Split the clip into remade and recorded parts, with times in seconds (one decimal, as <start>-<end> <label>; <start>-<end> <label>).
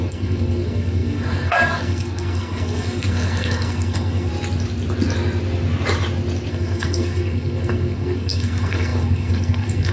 0.0-4.3 remade; 4.3-6.5 recorded; 6.5-9.9 remade